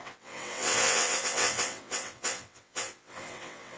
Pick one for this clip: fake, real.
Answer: fake